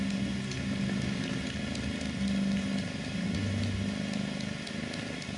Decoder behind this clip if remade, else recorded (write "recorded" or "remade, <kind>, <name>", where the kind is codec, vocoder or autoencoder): recorded